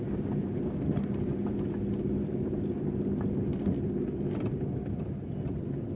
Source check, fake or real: real